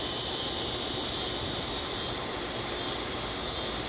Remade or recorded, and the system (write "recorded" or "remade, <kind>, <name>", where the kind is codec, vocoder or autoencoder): recorded